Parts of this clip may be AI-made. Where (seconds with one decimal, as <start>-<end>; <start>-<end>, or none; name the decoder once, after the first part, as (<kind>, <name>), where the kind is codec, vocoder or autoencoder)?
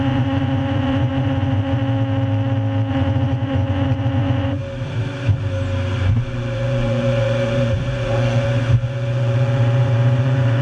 0.0-1.8 (vocoder, Vocos); 2.9-4.6; 5.9-10.6